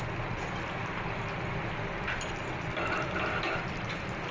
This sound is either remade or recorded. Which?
recorded